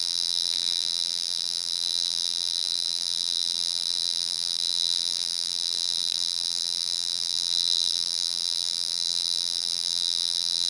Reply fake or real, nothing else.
fake